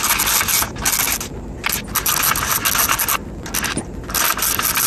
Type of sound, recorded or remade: recorded